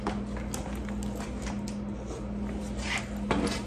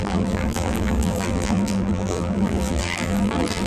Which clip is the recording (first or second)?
first